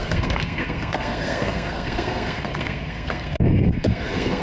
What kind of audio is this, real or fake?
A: fake